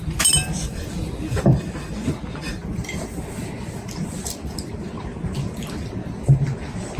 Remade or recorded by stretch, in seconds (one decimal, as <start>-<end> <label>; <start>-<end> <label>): 0.0-2.6 remade; 2.6-7.0 recorded